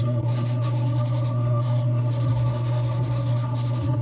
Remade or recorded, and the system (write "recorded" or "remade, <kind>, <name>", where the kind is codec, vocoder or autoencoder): remade, codec, SNAC